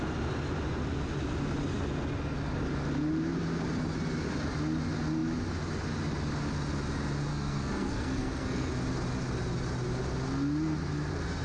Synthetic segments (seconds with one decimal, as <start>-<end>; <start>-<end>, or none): 7.3-8.7